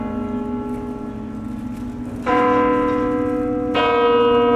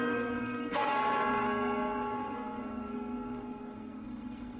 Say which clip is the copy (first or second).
second